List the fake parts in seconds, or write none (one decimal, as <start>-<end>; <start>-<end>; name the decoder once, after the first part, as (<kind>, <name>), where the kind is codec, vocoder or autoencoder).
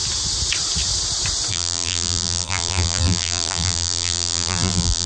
1.5-5.1 (vocoder, BigVGAN v2)